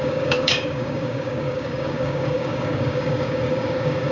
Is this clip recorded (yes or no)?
no